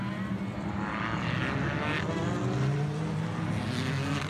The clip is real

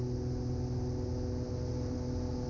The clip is real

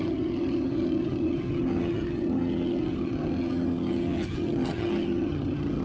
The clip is fake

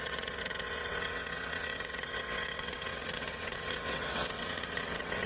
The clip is fake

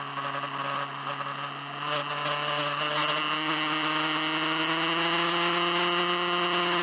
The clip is real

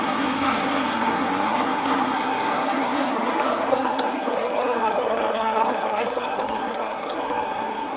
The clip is fake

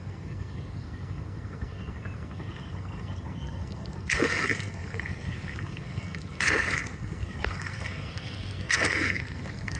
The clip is fake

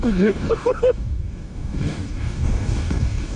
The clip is fake